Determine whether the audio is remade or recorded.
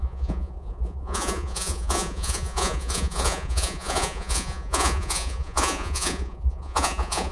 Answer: remade